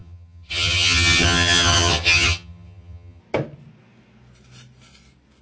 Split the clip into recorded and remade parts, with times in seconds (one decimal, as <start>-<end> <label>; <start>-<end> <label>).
0.0-3.2 remade; 3.2-5.4 recorded